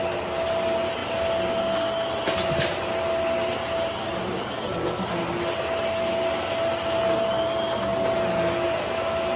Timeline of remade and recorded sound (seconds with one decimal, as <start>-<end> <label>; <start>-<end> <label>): 0.0-9.4 recorded